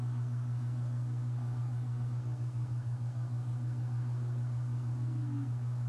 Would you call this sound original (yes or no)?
no